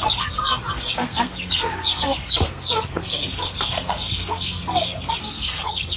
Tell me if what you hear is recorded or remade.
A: remade